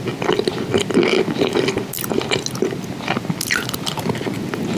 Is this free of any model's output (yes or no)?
yes